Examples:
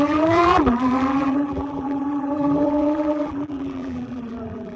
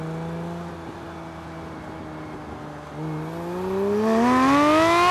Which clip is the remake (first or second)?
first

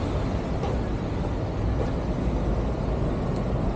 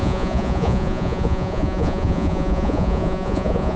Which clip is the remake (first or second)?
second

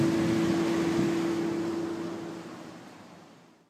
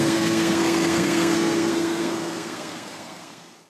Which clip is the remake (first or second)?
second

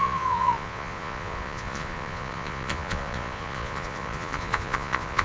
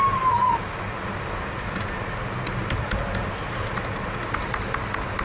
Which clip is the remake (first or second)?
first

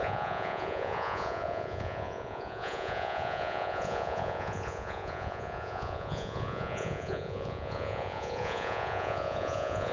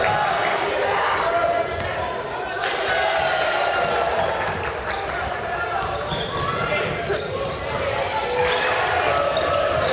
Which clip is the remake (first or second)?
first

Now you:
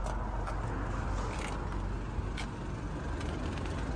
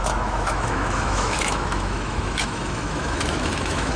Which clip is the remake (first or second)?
second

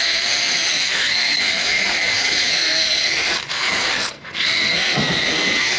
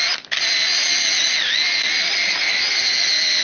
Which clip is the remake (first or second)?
first